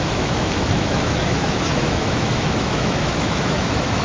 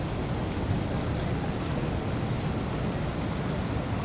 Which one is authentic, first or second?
second